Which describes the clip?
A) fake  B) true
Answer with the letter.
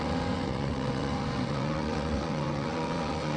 A